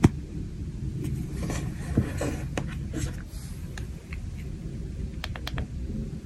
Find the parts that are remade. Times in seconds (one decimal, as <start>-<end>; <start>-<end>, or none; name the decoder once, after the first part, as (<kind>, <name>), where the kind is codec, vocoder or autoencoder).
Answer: none